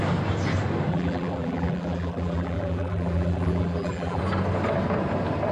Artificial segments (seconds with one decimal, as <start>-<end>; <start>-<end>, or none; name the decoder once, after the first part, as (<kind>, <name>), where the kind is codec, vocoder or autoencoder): 0.9-4.2 (vocoder, BigVGAN v2)